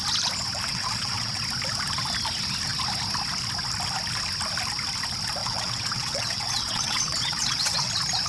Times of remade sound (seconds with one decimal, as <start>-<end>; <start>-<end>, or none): 0.7-1.4; 5.4-7.9